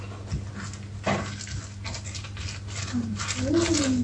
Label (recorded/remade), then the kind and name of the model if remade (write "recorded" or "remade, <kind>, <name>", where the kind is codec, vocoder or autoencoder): recorded